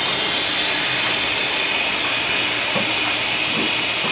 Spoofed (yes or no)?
no